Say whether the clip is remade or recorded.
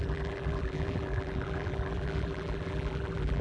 remade